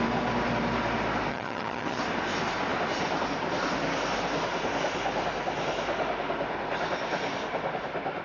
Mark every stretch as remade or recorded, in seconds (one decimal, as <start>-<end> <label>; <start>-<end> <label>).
0.0-1.3 recorded; 1.3-2.0 remade; 2.0-8.2 recorded